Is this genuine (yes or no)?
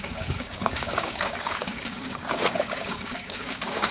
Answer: no